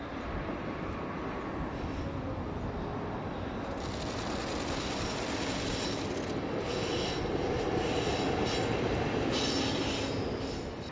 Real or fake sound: real